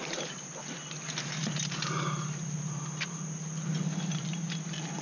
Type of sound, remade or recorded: remade